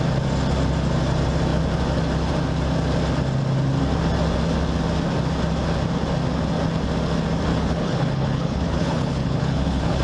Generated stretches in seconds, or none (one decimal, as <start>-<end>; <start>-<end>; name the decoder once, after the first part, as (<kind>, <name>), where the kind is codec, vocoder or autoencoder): 7.5-10.0 (codec, HILCodec)